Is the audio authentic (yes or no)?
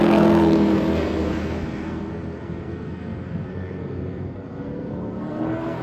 no